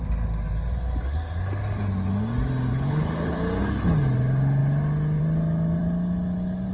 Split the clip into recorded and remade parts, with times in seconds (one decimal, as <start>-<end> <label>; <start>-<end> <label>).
0.0-2.7 recorded; 2.7-3.4 remade; 3.4-6.7 recorded